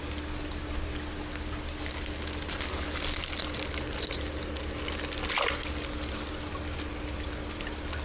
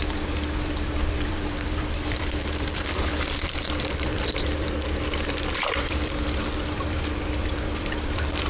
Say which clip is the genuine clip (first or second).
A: first